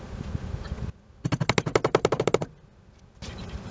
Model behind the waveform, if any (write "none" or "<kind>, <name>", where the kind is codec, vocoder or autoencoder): none